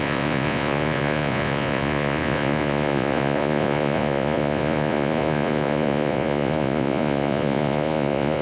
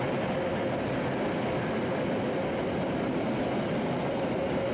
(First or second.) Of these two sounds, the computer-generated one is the first